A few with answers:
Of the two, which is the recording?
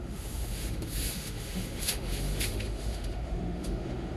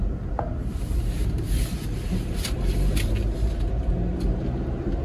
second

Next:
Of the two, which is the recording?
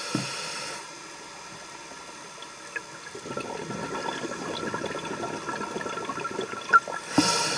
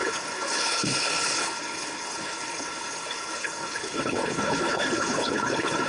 first